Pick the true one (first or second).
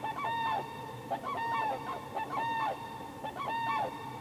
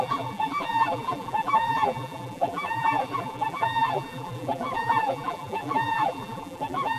first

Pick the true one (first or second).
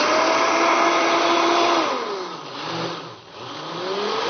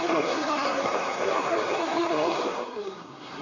first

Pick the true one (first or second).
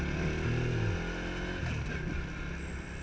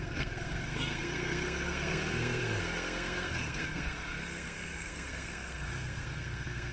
first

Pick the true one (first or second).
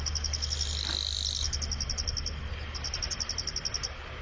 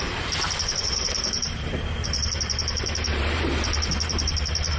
first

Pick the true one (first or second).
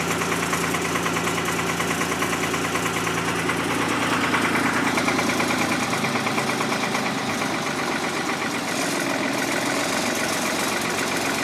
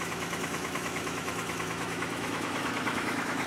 first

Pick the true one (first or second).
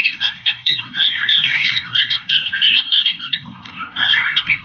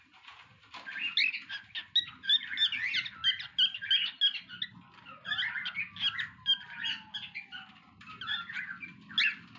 second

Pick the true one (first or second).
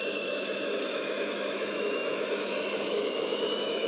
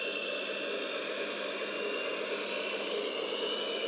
second